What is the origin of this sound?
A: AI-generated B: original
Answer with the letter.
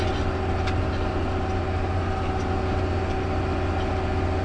B